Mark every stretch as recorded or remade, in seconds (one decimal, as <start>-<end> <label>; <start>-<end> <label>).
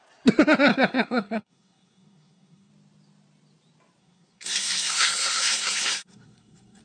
0.0-0.7 recorded; 0.7-2.7 remade; 2.7-4.0 recorded; 4.0-6.8 remade